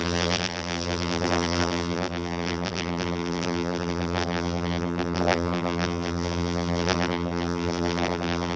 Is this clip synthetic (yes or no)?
yes